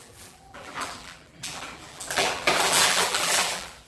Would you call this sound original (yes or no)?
no